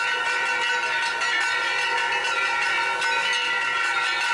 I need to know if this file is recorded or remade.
recorded